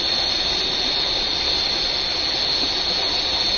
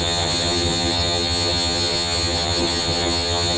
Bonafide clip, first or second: first